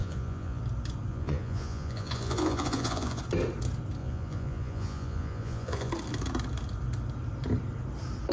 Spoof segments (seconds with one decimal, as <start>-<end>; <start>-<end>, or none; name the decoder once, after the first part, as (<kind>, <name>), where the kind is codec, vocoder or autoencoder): 0.0-0.6 (vocoder, Vocos); 1.1-3.2; 4.0-5.9